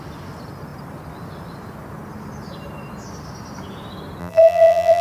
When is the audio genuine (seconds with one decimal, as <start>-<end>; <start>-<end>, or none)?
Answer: 0.0-4.2